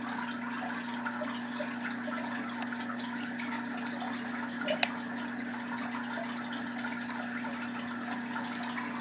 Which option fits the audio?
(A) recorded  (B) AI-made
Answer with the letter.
A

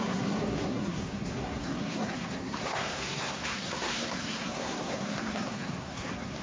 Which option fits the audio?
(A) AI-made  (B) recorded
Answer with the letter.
A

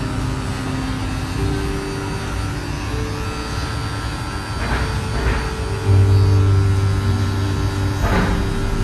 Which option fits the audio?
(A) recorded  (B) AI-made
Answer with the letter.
A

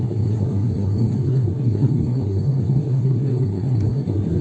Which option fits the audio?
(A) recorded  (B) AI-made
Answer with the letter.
B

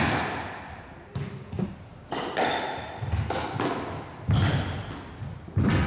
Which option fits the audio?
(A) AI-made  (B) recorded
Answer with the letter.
B